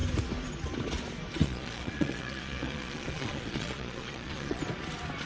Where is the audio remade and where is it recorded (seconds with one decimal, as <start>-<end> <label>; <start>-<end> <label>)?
0.0-1.4 recorded; 1.4-4.6 remade; 4.6-5.3 recorded